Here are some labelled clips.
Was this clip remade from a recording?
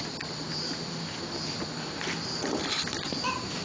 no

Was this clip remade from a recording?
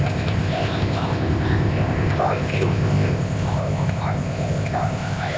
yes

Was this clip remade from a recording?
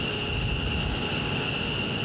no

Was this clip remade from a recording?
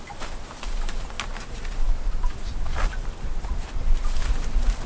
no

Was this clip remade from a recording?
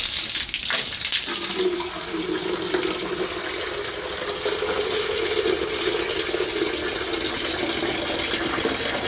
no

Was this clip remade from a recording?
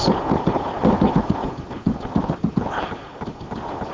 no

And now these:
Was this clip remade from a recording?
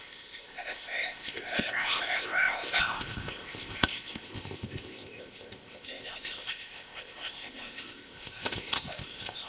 yes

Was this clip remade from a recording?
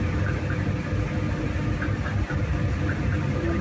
no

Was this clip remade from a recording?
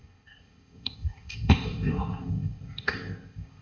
yes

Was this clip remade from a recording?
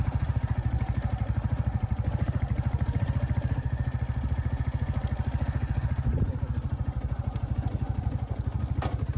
no